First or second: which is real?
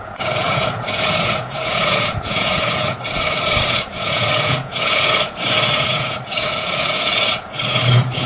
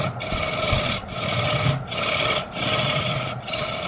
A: second